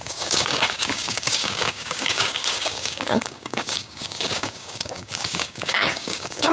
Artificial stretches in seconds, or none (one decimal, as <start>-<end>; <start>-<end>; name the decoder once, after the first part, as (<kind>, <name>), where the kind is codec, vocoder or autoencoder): 0.0-6.5 (codec, DAC)